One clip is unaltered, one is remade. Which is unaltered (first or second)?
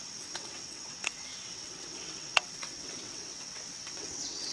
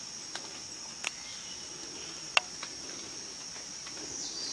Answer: second